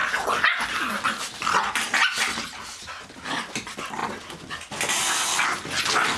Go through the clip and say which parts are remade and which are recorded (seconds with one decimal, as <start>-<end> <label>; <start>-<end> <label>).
0.0-6.2 recorded